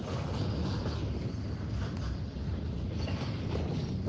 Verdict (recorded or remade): recorded